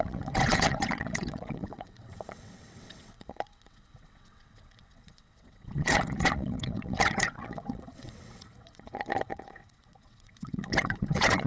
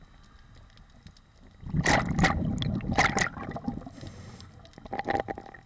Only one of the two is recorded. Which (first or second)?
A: second